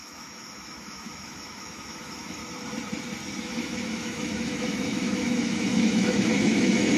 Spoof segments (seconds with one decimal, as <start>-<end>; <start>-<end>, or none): 0.0-2.4; 3.4-7.0